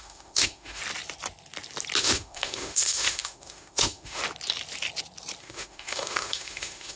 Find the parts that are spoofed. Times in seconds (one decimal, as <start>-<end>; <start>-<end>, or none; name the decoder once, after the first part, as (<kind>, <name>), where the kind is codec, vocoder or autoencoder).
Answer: 0.0-0.8 (autoencoder, DAC-VAE); 2.0-4.2; 5.4-7.0